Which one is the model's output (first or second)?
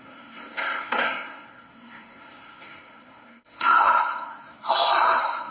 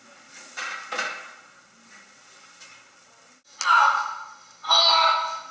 first